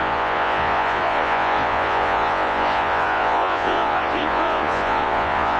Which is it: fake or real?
fake